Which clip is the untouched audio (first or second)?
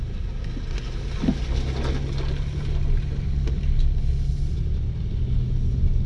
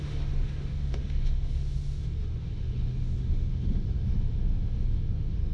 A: first